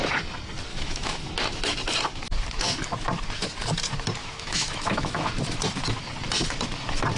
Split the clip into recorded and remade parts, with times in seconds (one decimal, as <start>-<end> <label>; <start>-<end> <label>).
0.0-0.7 recorded; 0.7-1.3 remade; 1.3-4.2 recorded; 4.2-5.3 remade; 5.3-7.2 recorded